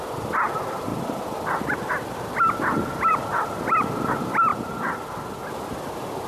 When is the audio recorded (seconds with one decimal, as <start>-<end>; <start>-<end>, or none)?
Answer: 0.0-0.9; 4.1-6.3